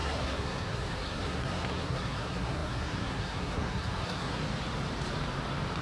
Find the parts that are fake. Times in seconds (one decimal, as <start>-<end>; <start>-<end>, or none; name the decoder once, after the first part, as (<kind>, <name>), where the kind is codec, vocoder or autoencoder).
0.0-4.4 (codec, SNAC)